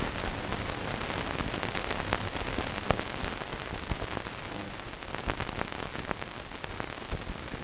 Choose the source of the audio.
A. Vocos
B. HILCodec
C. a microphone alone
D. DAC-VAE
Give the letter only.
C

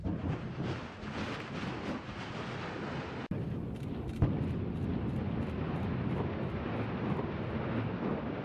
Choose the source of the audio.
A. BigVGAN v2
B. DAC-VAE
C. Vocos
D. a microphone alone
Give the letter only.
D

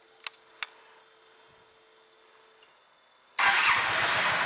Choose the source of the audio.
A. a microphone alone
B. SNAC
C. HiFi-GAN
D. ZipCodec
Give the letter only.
A